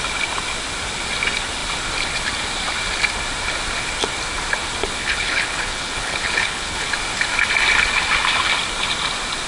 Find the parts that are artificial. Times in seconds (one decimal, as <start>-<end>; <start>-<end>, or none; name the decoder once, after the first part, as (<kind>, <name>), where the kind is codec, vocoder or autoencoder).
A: 5.0-6.9 (codec, HILCodec)